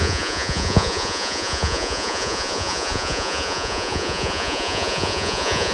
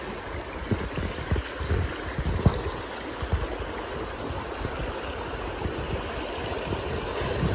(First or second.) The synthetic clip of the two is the first